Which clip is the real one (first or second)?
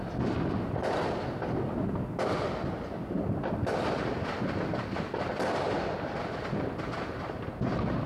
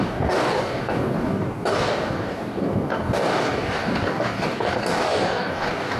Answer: first